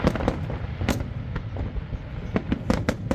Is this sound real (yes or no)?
yes